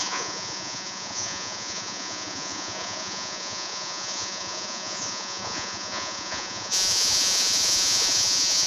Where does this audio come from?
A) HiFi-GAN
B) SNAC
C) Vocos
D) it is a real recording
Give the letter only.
C